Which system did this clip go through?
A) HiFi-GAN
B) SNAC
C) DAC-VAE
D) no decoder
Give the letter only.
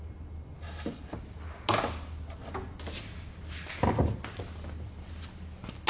D